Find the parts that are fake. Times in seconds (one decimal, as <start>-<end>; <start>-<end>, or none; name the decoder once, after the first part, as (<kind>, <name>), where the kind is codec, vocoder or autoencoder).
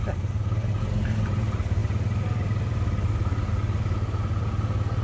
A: none